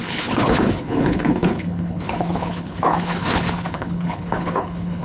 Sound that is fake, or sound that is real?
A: fake